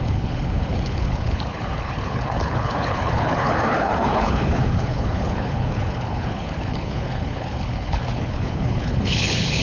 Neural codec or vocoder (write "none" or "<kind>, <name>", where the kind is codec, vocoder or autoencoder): codec, HILCodec